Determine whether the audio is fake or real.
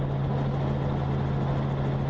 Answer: real